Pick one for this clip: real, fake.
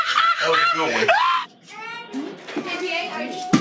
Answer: real